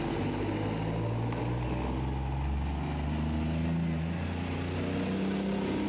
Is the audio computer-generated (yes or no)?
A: no